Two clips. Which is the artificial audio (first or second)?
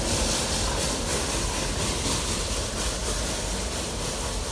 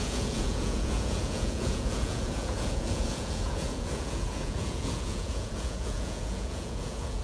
second